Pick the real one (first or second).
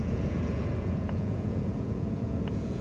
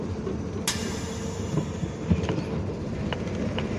second